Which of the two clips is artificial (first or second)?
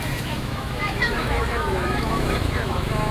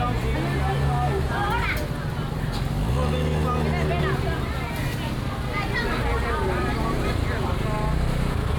first